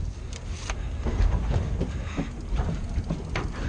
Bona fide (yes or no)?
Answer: yes